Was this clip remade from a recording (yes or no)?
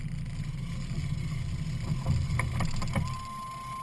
no